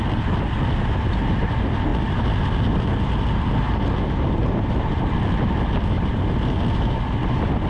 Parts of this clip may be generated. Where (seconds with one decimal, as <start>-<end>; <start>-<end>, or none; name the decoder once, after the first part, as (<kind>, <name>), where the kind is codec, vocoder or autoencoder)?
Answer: none